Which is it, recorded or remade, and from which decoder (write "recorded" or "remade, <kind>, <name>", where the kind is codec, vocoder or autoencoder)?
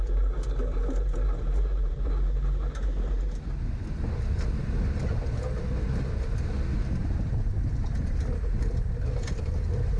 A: recorded